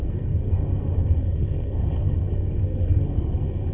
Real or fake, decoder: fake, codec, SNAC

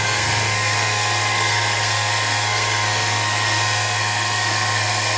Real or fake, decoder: fake, codec, SNAC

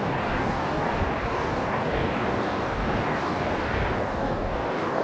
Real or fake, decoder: fake, codec, DAC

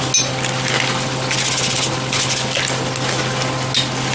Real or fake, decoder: real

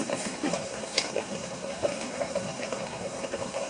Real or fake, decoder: fake, codec, SNAC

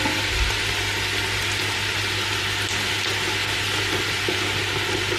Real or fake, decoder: real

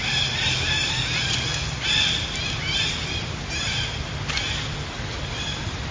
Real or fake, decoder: real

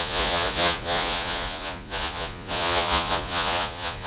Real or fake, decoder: fake, vocoder, Vocos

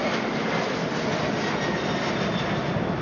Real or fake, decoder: real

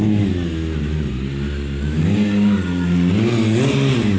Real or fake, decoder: real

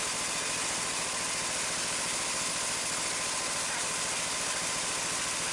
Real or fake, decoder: real